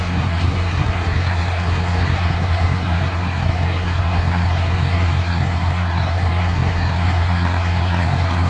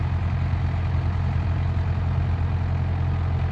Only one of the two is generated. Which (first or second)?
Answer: first